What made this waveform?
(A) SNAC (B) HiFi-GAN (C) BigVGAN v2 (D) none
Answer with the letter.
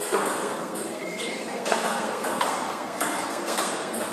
A